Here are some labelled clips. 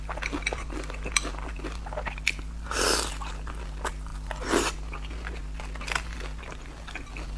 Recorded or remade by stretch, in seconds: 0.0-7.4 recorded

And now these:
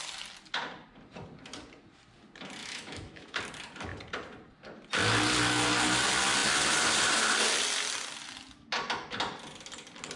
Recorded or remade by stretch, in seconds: 0.0-2.6 recorded; 2.6-3.4 remade; 3.4-10.2 recorded